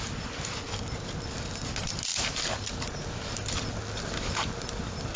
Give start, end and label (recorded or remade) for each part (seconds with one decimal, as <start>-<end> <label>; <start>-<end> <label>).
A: 0.0-5.2 recorded